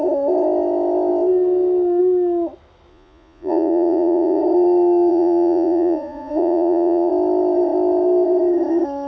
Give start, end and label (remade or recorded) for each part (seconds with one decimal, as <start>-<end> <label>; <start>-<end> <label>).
0.0-2.9 recorded; 2.9-4.4 remade; 4.4-5.1 recorded; 5.1-7.1 remade; 7.1-9.1 recorded